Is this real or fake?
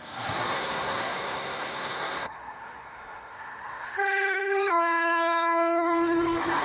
fake